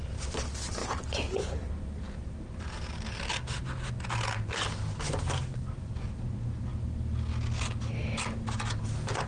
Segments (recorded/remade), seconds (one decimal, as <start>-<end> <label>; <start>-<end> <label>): 0.0-9.3 recorded